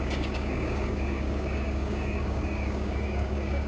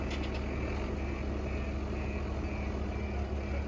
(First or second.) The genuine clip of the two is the second